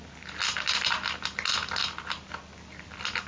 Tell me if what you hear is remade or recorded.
recorded